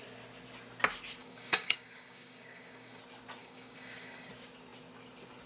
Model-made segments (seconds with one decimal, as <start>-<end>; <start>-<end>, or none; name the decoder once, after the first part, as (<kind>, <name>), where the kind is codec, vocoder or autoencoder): 1.2-3.0 (codec, DAC); 3.4-4.3